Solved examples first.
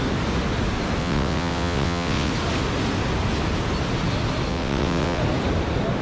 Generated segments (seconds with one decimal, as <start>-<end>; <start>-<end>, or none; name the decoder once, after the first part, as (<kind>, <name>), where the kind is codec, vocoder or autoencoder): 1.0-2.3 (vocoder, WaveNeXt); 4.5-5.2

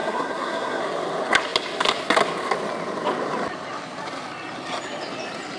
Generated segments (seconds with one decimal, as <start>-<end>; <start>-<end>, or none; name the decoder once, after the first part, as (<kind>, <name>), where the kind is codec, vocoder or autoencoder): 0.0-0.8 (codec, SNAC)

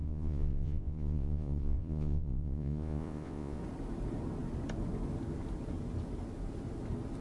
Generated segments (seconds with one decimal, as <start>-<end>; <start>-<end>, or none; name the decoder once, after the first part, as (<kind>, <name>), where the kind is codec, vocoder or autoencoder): 0.0-3.6 (vocoder, Vocos)